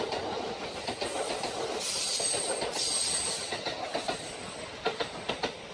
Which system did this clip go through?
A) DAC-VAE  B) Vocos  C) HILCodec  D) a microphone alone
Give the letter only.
D